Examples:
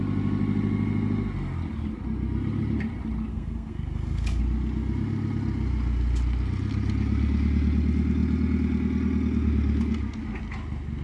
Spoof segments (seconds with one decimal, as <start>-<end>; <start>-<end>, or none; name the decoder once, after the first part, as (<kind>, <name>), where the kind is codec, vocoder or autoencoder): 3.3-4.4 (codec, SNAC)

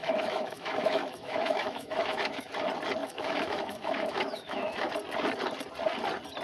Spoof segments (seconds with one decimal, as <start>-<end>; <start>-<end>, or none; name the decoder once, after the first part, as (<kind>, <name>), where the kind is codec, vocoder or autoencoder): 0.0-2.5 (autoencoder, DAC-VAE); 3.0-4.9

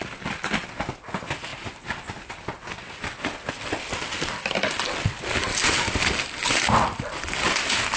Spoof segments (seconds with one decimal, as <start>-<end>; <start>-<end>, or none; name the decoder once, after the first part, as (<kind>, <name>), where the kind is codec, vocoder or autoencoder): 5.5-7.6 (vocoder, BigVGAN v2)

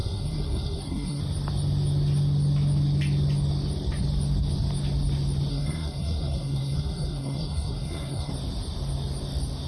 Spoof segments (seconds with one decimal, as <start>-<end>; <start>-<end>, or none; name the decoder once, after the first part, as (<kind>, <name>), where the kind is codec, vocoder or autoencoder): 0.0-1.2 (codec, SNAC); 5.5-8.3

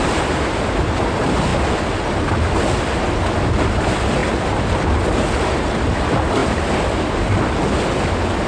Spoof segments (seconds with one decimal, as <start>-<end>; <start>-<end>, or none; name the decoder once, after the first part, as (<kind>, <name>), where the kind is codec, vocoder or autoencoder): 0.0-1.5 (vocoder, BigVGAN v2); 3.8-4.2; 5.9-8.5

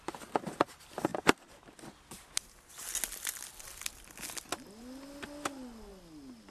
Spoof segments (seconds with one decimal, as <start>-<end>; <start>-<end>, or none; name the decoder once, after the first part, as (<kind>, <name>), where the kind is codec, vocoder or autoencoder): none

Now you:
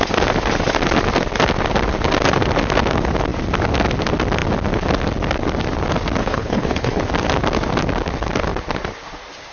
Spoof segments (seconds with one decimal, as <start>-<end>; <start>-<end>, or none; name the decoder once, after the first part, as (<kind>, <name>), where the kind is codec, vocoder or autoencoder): 6.2-7.0 (codec, HILCodec)